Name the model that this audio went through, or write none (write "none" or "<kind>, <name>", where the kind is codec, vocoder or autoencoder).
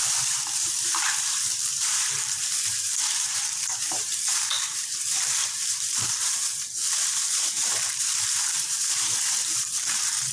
vocoder, BigVGAN v2